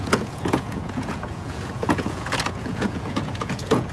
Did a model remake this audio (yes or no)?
yes